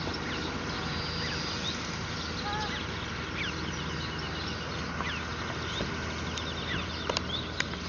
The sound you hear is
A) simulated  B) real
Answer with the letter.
B